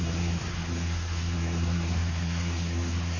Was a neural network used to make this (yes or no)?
yes